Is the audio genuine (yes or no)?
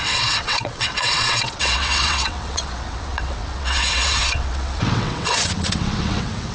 no